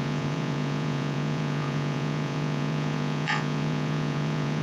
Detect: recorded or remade remade